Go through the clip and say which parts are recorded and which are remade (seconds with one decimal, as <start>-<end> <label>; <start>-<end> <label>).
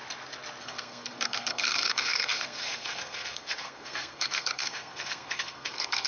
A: 0.0-0.6 recorded; 0.6-6.1 remade